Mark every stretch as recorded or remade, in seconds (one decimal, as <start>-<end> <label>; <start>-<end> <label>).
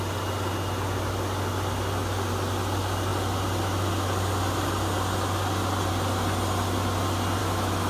0.0-7.4 recorded; 7.4-7.9 remade